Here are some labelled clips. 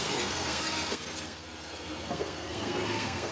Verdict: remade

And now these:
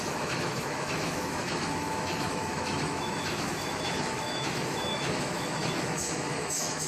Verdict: remade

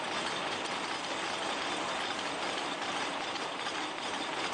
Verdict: recorded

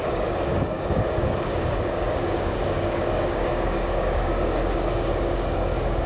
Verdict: remade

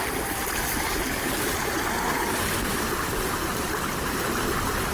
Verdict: recorded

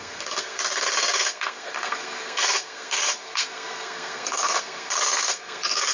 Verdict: remade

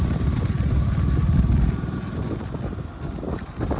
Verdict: recorded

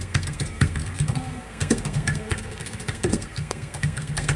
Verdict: remade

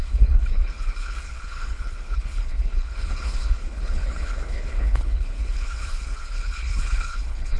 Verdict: remade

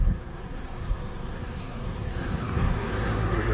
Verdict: remade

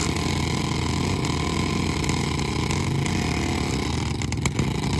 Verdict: recorded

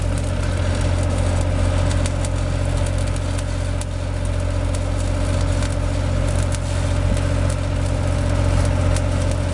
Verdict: recorded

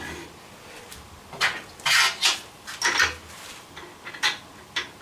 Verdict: recorded